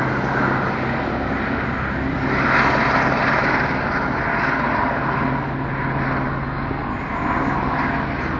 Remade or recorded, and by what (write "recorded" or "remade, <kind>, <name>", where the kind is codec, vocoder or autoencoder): recorded